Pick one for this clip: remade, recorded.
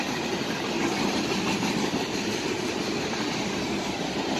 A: recorded